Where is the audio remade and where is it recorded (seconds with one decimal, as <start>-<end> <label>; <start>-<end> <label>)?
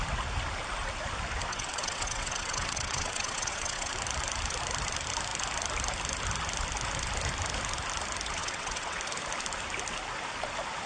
0.0-1.5 recorded; 1.5-3.9 remade; 3.9-8.4 recorded; 8.4-9.0 remade; 9.0-10.9 recorded